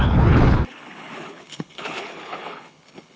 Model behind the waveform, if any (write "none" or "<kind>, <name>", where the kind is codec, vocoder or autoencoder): codec, HILCodec